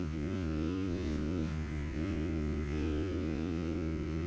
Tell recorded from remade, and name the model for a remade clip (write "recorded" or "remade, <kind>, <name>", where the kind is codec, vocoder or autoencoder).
remade, vocoder, Vocos